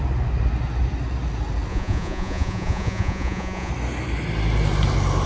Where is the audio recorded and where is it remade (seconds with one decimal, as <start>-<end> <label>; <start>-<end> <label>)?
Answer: 0.0-1.7 recorded; 1.7-3.7 remade; 3.7-5.3 recorded